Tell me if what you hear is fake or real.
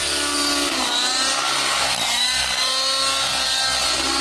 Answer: real